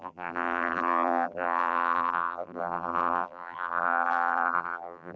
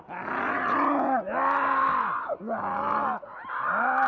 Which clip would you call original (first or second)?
second